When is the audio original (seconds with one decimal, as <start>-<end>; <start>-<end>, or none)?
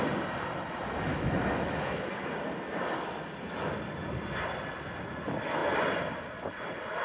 0.0-1.1; 2.1-7.0